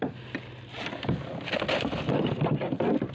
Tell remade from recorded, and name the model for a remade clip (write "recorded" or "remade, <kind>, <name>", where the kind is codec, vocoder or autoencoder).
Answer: recorded